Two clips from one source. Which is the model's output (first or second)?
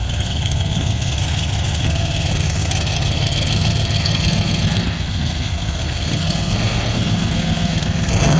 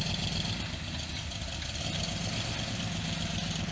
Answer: first